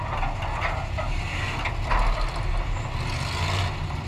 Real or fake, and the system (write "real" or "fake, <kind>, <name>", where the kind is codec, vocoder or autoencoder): real